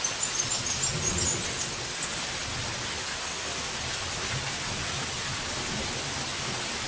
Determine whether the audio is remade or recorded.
recorded